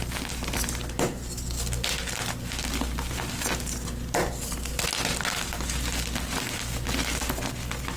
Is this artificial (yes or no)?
no